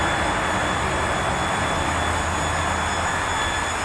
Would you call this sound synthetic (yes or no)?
no